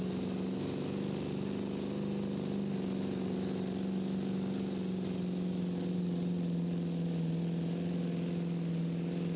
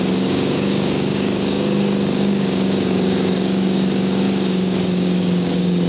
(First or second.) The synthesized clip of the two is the second